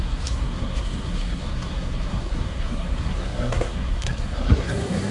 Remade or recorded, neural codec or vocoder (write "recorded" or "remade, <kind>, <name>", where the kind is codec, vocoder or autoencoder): remade, codec, SNAC